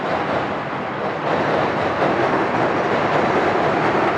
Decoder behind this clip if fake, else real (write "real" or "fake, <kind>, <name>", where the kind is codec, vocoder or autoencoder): real